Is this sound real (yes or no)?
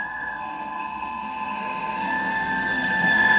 no